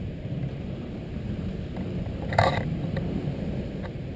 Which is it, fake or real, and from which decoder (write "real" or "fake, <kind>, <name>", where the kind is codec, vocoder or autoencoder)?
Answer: fake, vocoder, BigVGAN v2